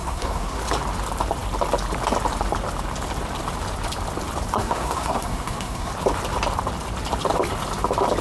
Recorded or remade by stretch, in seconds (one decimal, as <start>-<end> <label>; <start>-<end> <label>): 0.0-0.6 remade; 0.6-4.5 recorded; 4.5-5.9 remade; 5.9-8.2 recorded